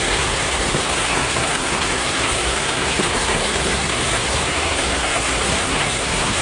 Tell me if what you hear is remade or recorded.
remade